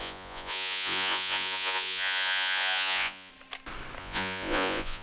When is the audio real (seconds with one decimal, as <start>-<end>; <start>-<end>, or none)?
3.3-4.0